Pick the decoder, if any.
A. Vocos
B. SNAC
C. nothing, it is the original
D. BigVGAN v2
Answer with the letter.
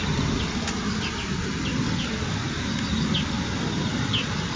C